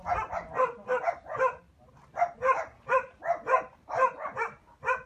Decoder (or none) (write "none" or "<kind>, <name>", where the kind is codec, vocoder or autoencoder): none